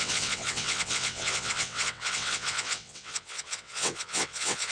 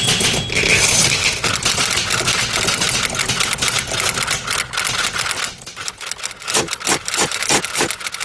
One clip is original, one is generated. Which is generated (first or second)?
first